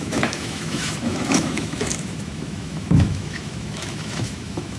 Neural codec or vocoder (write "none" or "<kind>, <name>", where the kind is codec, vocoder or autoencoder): autoencoder, DAC-VAE